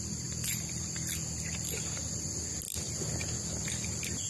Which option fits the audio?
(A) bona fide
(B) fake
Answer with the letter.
A